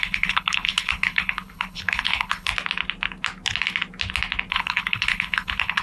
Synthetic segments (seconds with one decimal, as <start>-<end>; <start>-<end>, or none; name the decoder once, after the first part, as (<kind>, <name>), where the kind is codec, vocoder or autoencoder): 0.0-2.5 (codec, HILCodec); 4.5-5.8